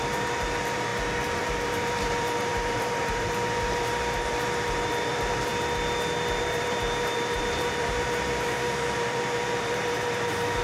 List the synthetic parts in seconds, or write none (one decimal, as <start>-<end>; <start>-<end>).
0.0-0.9; 1.4-5.5; 6.4-10.6